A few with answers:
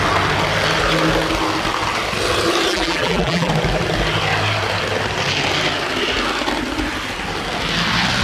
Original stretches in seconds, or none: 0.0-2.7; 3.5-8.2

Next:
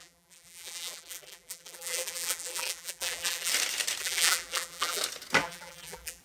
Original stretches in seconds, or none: 3.5-4.0; 5.0-5.4

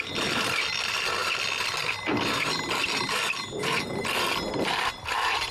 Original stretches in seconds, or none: 0.0-5.5

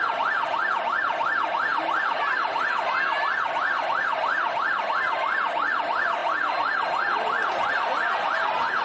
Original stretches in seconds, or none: 0.0-8.8

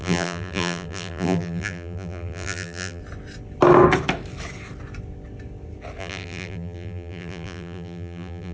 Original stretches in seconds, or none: 3.0-6.0

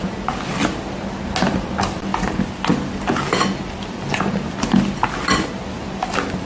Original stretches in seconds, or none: 0.0-6.5

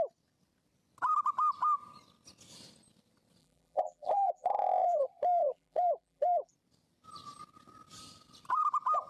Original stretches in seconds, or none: 0.0-3.4; 5.0-5.4; 6.5-9.1

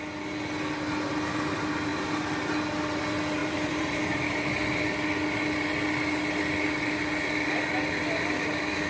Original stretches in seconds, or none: 0.0-3.4; 4.5-8.9